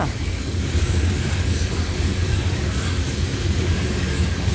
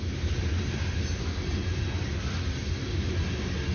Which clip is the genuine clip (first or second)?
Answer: second